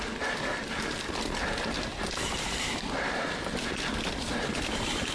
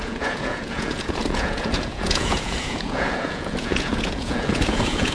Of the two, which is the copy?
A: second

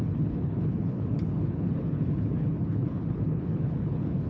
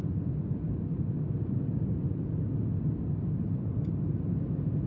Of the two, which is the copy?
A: first